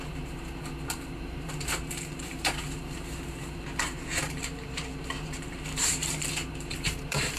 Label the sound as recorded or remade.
remade